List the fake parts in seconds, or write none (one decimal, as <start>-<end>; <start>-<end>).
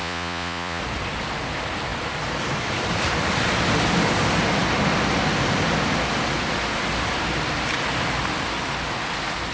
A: 0.0-0.8